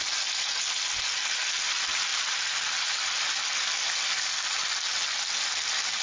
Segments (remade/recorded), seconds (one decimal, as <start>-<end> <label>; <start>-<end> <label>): 0.0-6.0 recorded